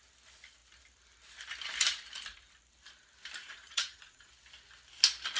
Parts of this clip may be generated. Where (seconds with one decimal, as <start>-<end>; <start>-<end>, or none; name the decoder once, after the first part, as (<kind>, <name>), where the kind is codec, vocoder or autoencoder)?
3.4-4.3 (vocoder, Vocos)